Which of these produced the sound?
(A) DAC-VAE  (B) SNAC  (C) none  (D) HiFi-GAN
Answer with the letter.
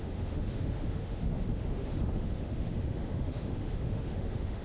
A